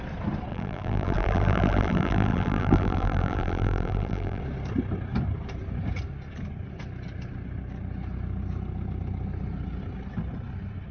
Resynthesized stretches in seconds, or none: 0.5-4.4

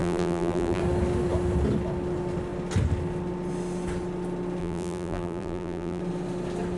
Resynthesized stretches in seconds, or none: 0.0-0.8; 4.6-6.0

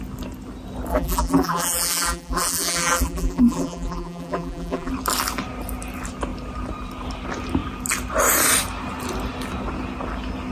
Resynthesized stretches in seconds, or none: 0.9-4.9

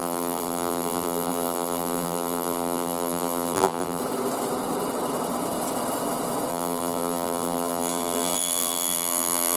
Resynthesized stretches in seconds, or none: 0.0-4.0; 6.5-9.6

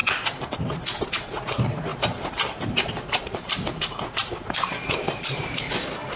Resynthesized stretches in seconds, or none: 1.9-5.6

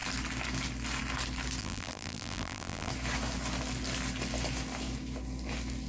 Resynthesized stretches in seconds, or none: 1.6-2.9

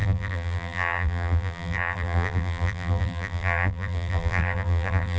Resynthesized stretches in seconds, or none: 0.0-5.2

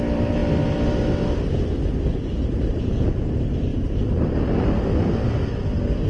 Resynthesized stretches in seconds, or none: 0.0-0.4; 3.0-3.7